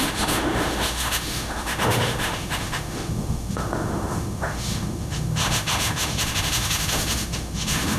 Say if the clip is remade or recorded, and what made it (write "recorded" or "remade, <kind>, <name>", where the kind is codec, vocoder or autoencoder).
remade, autoencoder, DAC-VAE